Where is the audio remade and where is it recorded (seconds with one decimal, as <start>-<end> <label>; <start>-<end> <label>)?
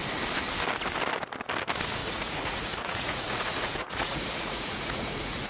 0.0-2.0 recorded; 2.0-5.5 remade